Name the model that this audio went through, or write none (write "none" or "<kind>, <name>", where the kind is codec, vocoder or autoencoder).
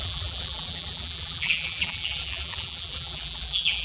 vocoder, BigVGAN v2